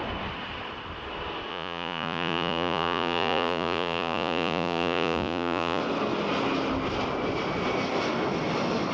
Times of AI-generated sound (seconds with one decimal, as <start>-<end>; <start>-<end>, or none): 1.5-5.8

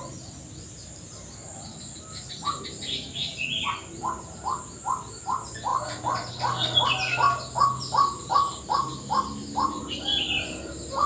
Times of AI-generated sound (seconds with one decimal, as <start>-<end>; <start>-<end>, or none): none

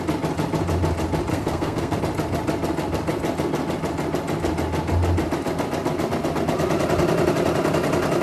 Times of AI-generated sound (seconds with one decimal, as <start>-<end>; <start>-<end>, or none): 1.3-2.0

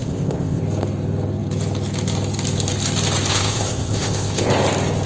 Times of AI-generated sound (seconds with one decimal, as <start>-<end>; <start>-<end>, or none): 0.0-0.6; 3.3-4.5

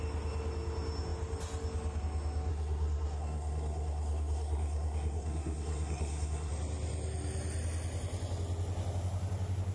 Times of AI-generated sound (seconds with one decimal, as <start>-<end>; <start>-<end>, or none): 2.5-6.5